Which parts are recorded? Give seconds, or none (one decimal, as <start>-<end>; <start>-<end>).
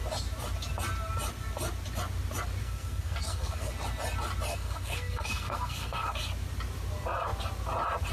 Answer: 0.0-2.6; 3.7-4.5; 6.2-8.1